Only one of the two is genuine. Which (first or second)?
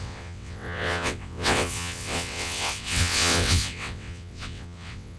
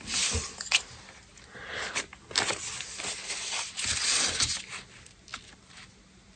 second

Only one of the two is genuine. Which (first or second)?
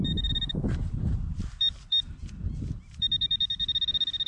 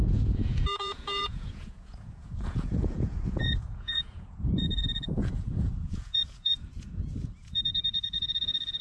first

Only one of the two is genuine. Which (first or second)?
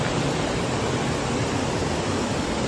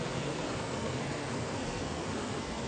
first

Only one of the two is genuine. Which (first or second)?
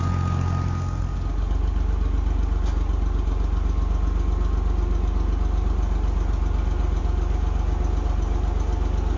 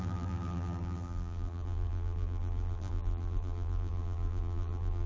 first